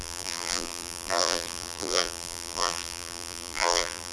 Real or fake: fake